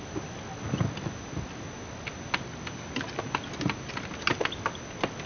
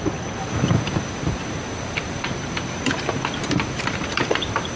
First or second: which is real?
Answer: first